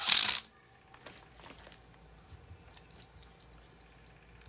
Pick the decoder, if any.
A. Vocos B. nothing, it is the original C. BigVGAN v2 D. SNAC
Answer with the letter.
B